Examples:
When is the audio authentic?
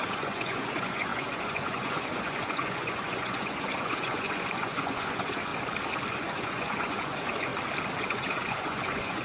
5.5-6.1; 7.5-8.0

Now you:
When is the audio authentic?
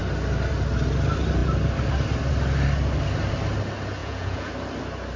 0.0-4.0; 4.5-5.2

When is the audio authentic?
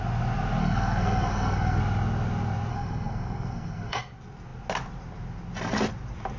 0.0-0.6; 1.8-2.7; 4.0-6.4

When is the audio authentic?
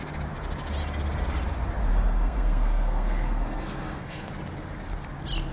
0.0-1.9; 4.3-5.5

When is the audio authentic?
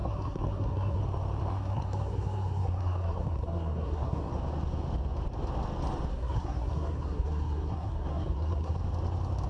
1.0-1.5; 4.3-6.1; 8.8-9.5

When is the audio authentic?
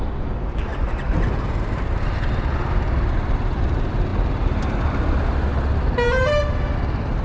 0.0-0.7; 1.8-7.2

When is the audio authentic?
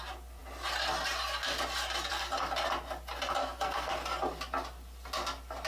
0.0-3.4; 3.9-5.7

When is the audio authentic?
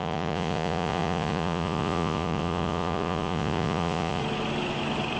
4.2-5.2